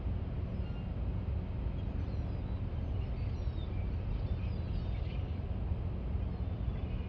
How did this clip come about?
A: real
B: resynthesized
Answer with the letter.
A